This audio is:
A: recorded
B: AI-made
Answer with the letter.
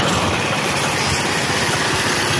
B